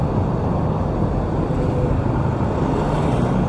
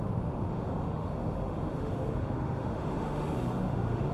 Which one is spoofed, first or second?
second